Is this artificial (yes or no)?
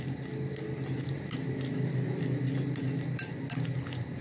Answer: no